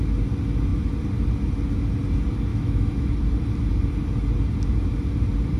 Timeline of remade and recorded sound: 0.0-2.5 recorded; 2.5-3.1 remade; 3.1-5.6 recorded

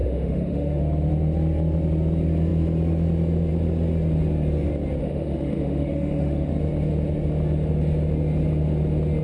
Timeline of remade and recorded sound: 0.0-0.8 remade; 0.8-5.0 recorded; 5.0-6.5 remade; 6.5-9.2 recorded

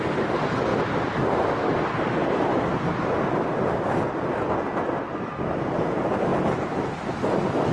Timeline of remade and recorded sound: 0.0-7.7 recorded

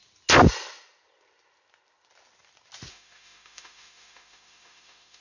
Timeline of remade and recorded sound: 0.0-2.9 recorded; 2.9-5.2 remade